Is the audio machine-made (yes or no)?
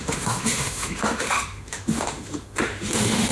yes